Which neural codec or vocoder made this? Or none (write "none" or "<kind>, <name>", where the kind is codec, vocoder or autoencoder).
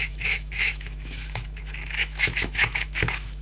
autoencoder, DAC-VAE